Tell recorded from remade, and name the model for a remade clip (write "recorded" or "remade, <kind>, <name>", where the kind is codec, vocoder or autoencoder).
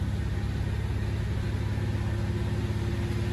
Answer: recorded